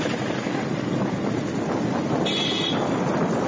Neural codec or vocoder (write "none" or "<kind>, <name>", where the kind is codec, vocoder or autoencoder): none